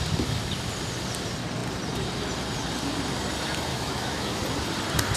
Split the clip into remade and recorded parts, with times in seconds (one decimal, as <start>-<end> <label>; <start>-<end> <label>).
0.0-3.7 recorded; 3.7-4.4 remade; 4.4-5.2 recorded